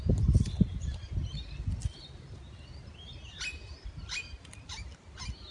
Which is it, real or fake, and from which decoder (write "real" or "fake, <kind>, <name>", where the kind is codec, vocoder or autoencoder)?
real